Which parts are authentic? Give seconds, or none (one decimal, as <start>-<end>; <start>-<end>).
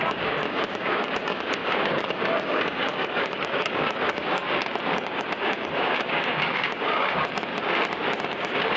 7.5-8.2